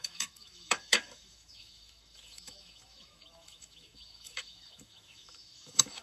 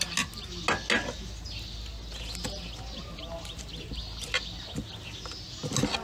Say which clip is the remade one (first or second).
first